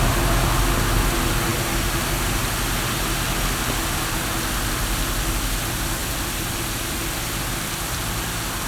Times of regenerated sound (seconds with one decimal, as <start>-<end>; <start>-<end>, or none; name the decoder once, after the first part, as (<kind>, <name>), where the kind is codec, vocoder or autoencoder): none

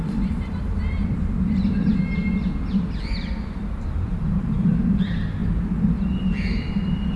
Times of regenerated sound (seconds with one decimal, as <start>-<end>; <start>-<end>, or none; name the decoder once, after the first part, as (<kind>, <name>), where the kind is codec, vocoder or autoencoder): 0.0-1.9 (vocoder, BigVGAN v2); 3.5-5.4; 6.2-7.2

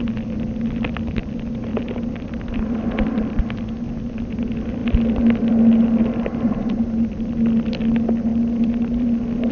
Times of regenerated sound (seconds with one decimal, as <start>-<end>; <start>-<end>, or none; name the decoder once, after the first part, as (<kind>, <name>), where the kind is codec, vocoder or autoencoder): 1.7-3.4 (vocoder, BigVGAN v2); 8.3-9.5